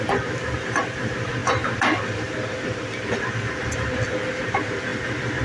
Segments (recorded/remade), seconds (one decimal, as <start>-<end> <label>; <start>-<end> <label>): 0.0-5.4 recorded